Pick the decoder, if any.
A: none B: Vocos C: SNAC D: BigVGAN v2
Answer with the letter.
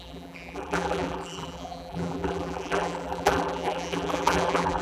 D